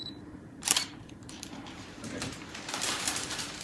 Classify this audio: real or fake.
fake